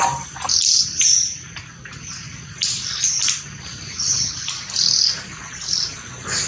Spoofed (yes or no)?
no